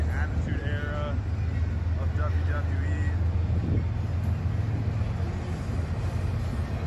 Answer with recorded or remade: recorded